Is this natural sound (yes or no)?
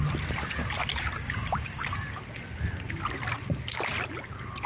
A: yes